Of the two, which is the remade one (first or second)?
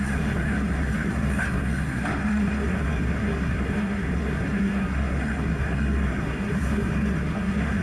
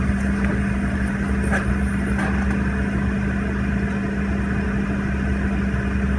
first